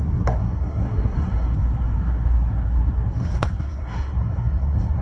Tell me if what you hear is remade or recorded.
remade